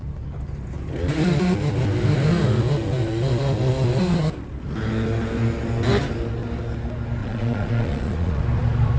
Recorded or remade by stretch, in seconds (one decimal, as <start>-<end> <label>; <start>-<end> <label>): 0.0-7.2 recorded; 7.2-8.4 remade; 8.4-9.0 recorded